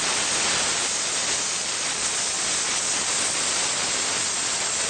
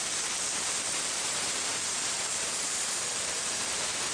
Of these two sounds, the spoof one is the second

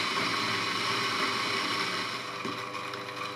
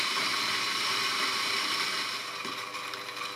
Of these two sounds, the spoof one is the second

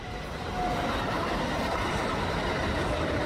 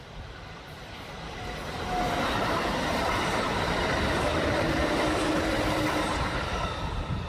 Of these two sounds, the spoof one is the second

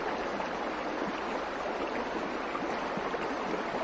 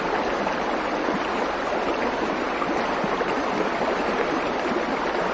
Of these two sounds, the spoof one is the second